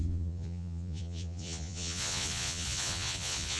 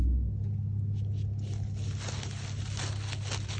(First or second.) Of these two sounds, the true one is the second